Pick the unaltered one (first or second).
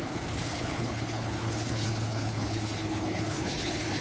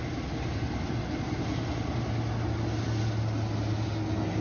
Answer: second